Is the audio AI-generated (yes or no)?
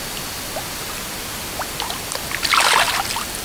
no